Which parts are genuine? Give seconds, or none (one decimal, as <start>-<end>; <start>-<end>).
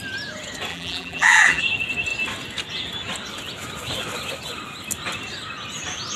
0.0-0.7; 1.6-6.2